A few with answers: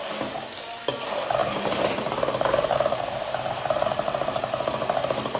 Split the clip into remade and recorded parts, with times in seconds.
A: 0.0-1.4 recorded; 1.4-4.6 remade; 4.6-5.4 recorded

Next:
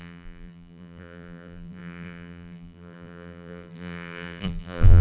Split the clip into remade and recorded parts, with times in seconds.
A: 0.0-5.0 remade

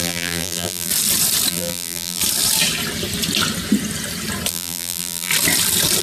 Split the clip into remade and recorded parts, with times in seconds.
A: 0.0-0.9 remade; 0.9-1.5 recorded; 1.5-2.2 remade; 2.2-4.5 recorded; 4.5-5.3 remade; 5.3-6.0 recorded

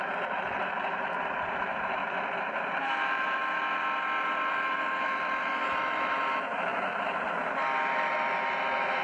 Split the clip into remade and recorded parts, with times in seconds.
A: 0.0-2.0 remade; 2.0-2.6 recorded; 2.6-3.4 remade; 3.4-4.5 recorded; 4.5-9.0 remade

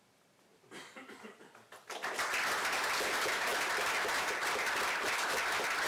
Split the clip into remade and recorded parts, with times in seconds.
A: 0.0-0.5 recorded; 0.5-1.1 remade; 1.1-5.9 recorded

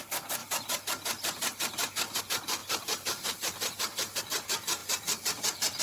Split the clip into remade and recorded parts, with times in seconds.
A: 0.0-0.4 recorded; 0.4-2.2 remade; 2.2-2.6 recorded; 2.6-4.2 remade; 4.2-5.8 recorded